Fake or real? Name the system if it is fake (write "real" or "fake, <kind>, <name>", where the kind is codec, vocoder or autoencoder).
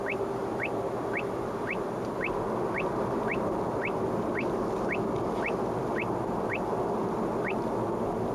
real